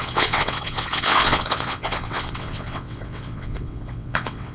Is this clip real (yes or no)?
no